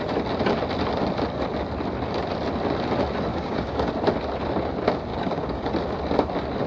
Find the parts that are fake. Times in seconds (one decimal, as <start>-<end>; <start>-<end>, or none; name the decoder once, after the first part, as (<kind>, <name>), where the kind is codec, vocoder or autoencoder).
3.3-3.9 (codec, DAC); 5.1-5.7